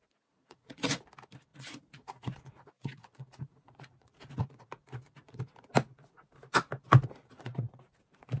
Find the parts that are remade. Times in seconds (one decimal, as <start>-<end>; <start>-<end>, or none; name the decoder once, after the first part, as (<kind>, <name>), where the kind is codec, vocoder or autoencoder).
0.4-1.0 (vocoder, Vocos); 1.5-5.4; 7.2-8.0